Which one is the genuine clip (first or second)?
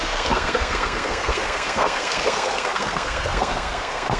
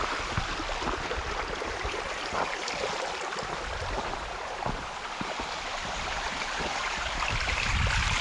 second